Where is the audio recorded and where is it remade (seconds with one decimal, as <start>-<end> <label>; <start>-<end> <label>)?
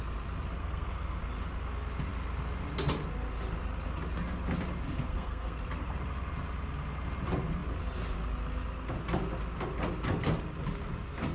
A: 0.0-0.6 recorded; 0.6-1.2 remade; 1.2-5.1 recorded; 5.1-5.6 remade; 5.6-11.3 recorded